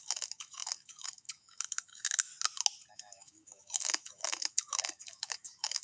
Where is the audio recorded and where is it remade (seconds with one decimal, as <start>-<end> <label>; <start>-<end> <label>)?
0.0-2.3 remade; 2.3-2.9 recorded; 2.9-5.8 remade

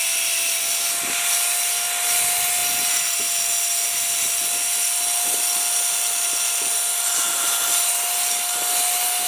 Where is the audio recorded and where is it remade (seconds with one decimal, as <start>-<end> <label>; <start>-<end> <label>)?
0.0-9.3 recorded

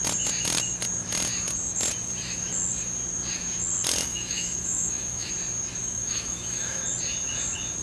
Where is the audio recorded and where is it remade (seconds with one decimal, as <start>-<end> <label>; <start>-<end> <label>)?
0.0-4.1 recorded; 4.1-5.3 remade; 5.3-5.8 recorded; 5.8-6.8 remade; 6.8-7.8 recorded